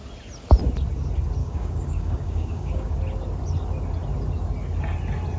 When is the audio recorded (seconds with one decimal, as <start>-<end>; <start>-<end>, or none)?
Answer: 0.0-1.4; 3.0-5.4